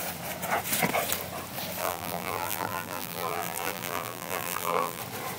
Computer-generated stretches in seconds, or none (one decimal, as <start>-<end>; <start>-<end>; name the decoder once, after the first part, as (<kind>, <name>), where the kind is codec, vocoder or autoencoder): 1.8-5.0 (vocoder, BigVGAN v2)